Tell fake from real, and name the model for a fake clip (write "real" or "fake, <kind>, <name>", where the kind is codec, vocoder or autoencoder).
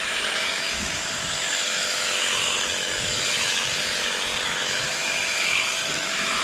fake, autoencoder, DAC-VAE